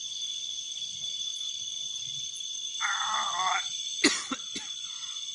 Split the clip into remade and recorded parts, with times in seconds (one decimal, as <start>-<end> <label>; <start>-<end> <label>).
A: 0.0-5.3 recorded